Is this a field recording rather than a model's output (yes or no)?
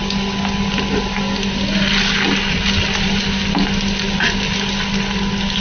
yes